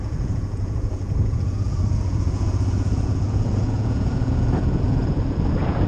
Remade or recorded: remade